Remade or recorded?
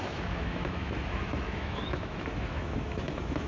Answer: remade